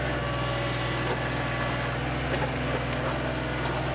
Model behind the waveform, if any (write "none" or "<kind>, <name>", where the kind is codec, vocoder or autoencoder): none